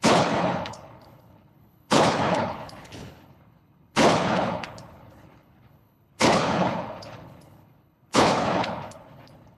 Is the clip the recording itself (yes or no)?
no